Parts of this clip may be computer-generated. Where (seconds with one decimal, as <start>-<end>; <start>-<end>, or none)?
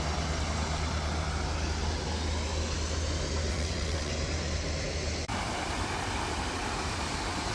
3.5-4.1